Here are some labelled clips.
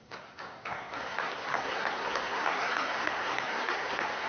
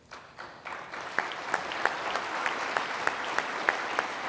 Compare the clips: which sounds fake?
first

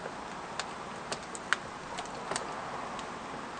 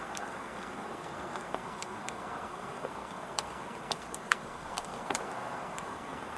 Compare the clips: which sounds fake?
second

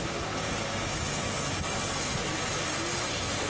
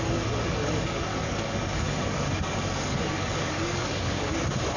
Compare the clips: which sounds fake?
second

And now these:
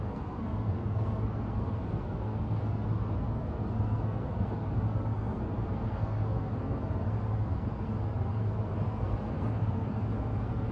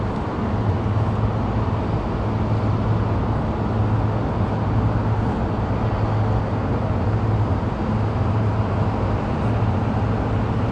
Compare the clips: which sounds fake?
first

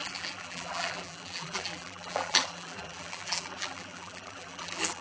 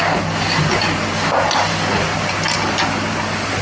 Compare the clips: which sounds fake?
first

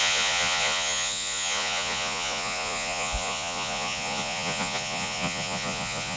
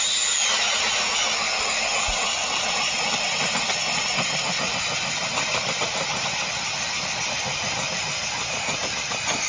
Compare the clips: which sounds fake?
first